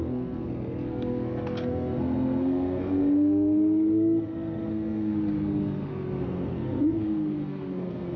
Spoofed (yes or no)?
yes